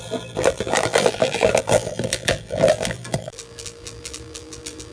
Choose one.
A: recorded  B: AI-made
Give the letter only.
B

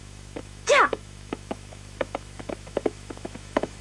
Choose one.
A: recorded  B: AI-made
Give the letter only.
B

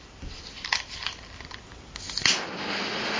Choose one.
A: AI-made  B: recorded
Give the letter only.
B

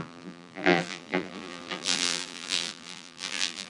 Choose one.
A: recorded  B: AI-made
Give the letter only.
B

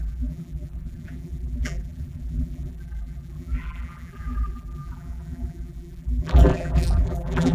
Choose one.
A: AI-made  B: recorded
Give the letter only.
A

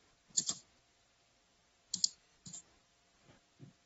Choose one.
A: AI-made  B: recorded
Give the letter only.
B